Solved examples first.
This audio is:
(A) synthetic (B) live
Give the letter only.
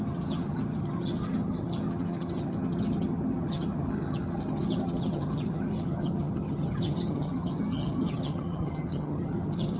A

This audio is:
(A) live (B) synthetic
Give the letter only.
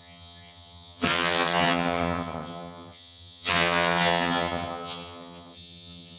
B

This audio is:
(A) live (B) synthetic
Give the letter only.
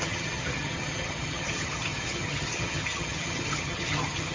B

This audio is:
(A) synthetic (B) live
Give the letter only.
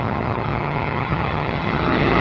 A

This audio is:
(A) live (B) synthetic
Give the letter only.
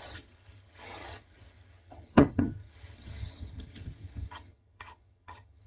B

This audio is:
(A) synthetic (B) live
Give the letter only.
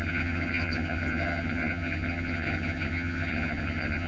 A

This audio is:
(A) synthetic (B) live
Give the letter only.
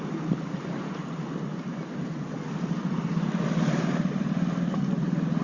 B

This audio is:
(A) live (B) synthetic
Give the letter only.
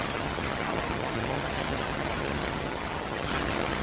B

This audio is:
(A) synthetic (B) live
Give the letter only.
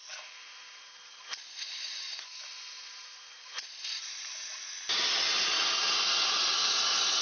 B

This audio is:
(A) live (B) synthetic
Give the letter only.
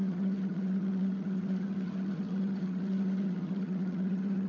B